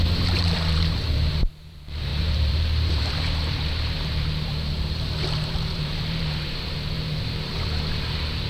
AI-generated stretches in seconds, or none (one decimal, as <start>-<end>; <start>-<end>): 0.0-8.5